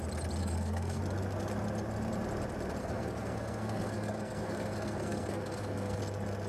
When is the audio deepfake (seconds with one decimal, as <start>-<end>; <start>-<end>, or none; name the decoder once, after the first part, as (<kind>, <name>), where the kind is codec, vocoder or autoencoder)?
0.4-1.0 (codec, SNAC); 2.8-6.0